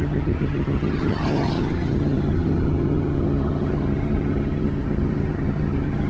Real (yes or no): no